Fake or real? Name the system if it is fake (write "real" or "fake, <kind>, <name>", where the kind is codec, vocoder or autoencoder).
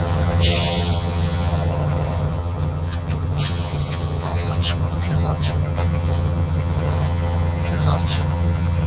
fake, vocoder, HiFi-GAN